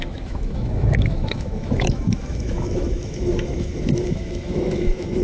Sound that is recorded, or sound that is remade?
remade